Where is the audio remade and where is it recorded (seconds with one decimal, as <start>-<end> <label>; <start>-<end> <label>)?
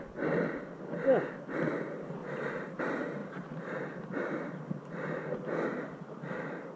0.0-2.2 recorded; 2.2-2.8 remade; 2.8-3.2 recorded; 3.2-3.7 remade; 3.7-6.8 recorded